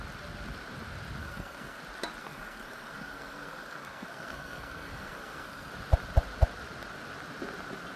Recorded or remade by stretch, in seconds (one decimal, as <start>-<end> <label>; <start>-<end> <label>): 0.0-1.2 recorded; 1.2-1.8 remade; 1.8-2.2 recorded; 2.2-5.7 remade; 5.7-8.0 recorded